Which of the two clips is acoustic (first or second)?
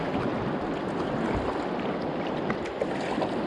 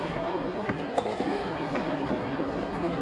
first